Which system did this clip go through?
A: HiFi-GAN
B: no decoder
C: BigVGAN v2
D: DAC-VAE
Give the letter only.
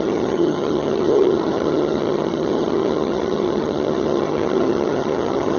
A